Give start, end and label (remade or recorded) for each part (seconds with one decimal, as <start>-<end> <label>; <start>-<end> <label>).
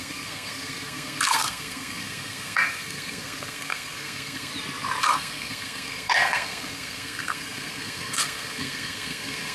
0.0-4.5 remade; 4.5-5.0 recorded; 5.0-9.5 remade